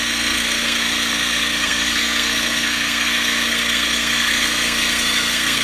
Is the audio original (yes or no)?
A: no